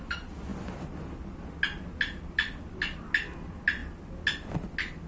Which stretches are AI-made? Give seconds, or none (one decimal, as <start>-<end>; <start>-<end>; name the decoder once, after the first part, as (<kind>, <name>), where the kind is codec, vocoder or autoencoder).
none